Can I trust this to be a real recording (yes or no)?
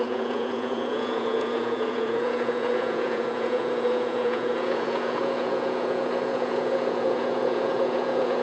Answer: no